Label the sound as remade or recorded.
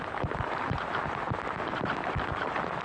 recorded